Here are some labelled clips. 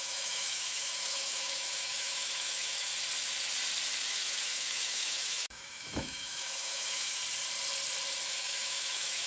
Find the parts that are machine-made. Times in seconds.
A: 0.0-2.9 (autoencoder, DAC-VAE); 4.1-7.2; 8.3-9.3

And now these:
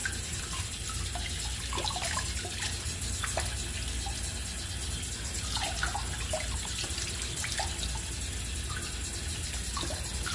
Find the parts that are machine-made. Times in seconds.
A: none